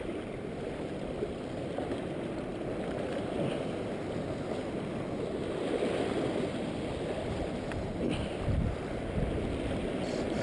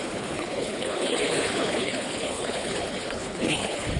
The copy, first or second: second